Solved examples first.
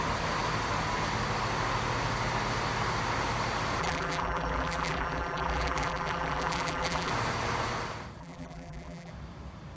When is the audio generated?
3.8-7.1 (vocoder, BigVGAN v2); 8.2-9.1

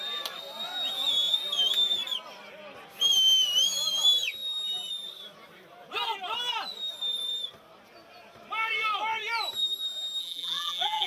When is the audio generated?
10.2-11.1 (vocoder, BigVGAN v2)

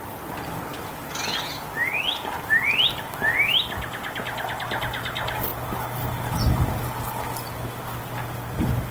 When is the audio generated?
0.7-3.5 (vocoder, BigVGAN v2); 5.5-8.0

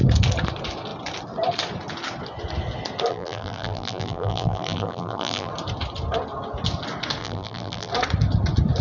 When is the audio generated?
3.1-5.5 (vocoder, BigVGAN v2); 7.2-7.9

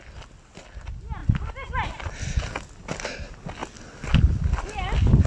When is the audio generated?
none

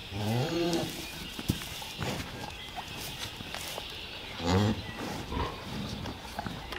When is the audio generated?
0.0-6.8 (vocoder, BigVGAN v2)

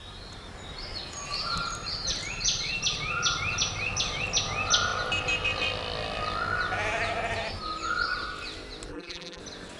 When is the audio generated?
8.9-9.4 (vocoder, BigVGAN v2)